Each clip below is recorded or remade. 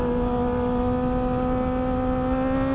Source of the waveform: recorded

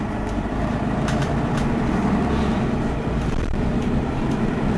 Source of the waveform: remade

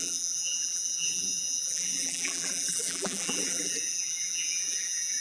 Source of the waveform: remade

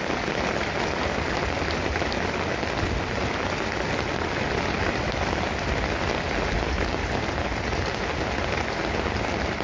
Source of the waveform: recorded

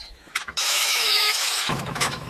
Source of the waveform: remade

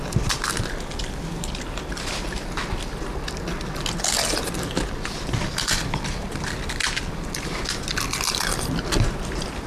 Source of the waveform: recorded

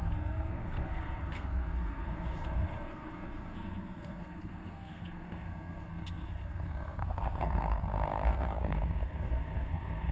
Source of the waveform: remade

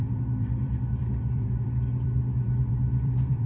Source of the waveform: remade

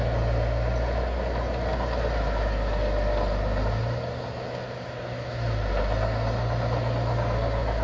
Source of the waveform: recorded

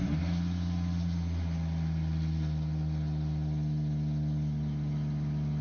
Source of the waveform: recorded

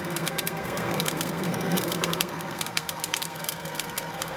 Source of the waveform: remade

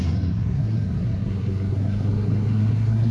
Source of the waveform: remade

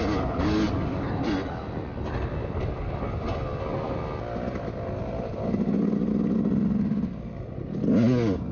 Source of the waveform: recorded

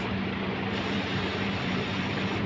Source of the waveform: remade